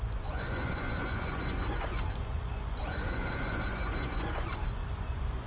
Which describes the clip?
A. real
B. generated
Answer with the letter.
B